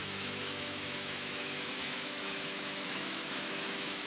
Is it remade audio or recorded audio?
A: remade